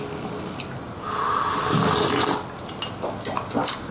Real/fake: real